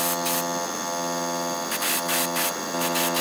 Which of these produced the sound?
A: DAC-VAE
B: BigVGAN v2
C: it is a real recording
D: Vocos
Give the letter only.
C